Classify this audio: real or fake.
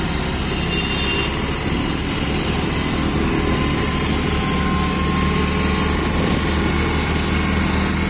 real